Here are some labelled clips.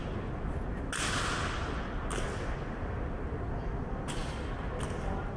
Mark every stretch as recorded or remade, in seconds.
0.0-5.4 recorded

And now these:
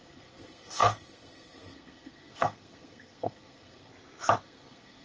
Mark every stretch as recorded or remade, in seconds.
0.0-3.9 remade; 3.9-4.4 recorded; 4.4-5.0 remade

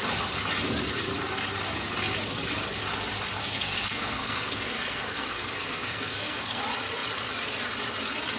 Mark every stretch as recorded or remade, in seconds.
0.0-3.4 recorded; 3.4-6.6 remade; 6.6-8.4 recorded

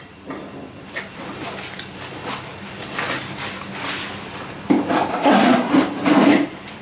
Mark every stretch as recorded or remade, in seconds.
0.0-5.1 recorded; 5.1-5.7 remade; 5.7-6.8 recorded